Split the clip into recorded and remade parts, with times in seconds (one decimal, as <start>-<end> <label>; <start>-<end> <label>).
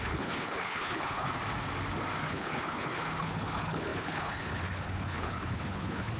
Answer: 0.0-1.4 remade; 1.4-2.2 recorded; 2.2-6.2 remade